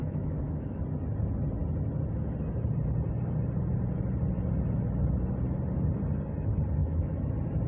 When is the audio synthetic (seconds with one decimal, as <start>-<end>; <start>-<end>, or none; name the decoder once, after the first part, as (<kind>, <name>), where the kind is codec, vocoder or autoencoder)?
0.0-0.8 (autoencoder, DAC-VAE); 6.8-7.3